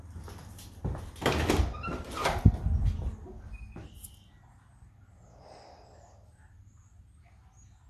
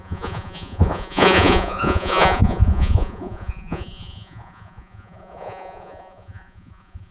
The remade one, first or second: second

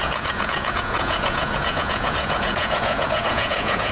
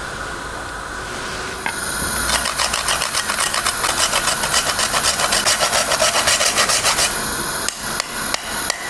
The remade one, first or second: first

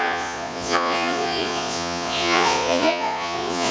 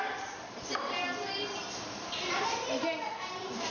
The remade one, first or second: first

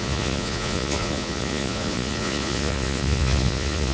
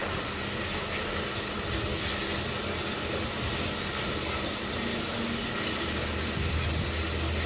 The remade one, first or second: first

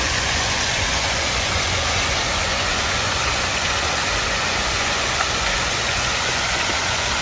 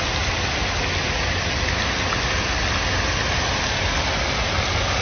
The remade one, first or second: first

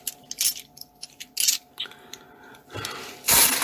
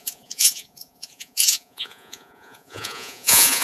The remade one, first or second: second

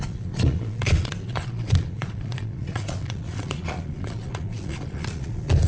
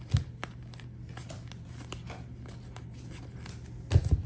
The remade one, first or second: first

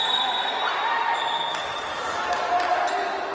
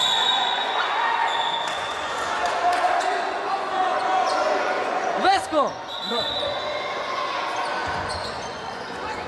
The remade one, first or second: second